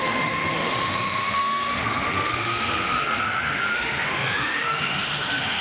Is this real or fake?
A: fake